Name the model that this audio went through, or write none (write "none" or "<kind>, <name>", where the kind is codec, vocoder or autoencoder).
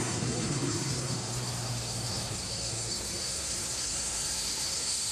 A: codec, SNAC